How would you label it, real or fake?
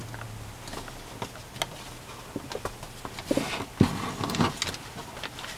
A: real